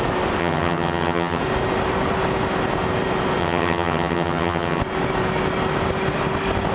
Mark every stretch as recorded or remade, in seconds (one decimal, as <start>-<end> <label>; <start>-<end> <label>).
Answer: 0.0-0.4 recorded; 0.4-1.4 remade; 1.4-3.4 recorded; 3.4-4.8 remade; 4.8-6.7 recorded